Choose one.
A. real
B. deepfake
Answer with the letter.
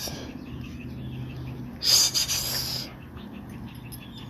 A